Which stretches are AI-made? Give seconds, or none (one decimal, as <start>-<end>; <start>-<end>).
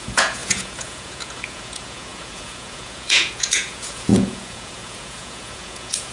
0.0-6.1